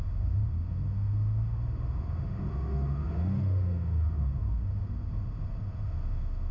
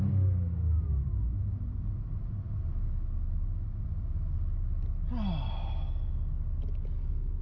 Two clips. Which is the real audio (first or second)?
second